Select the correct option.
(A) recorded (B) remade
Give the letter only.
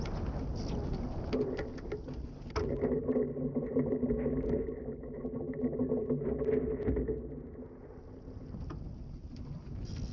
A